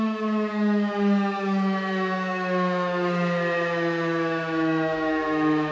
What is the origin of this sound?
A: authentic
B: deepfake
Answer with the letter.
B